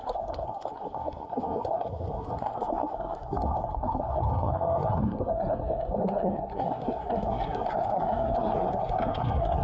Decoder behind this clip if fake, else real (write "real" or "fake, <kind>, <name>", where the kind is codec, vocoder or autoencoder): fake, codec, SNAC